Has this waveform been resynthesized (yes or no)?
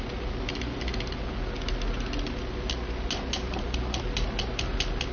no